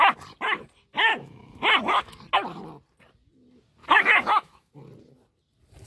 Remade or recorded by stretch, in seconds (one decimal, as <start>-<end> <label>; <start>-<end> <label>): 0.0-1.1 recorded; 1.1-2.2 remade; 2.2-3.8 recorded; 3.8-4.7 remade; 4.7-5.9 recorded